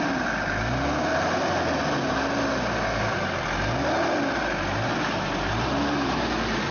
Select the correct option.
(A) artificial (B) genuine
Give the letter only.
B